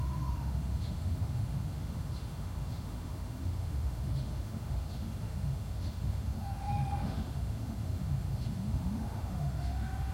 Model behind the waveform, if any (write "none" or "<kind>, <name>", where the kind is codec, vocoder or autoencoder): autoencoder, DAC-VAE